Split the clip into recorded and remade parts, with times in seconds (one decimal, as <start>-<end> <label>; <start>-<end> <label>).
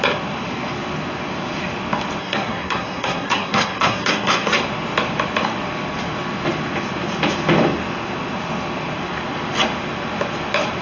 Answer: 0.0-2.2 recorded; 2.2-4.5 remade; 4.5-10.8 recorded